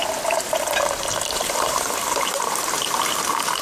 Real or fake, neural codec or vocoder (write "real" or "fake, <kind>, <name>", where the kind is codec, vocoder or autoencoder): fake, vocoder, BigVGAN v2